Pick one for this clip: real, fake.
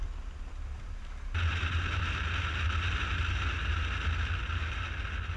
real